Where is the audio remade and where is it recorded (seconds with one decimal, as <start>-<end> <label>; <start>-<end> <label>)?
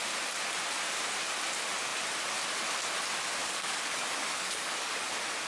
0.0-3.4 recorded; 3.4-5.1 remade; 5.1-5.5 recorded